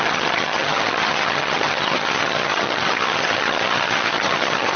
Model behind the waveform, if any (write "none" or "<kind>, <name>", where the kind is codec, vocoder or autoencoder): vocoder, HiFi-GAN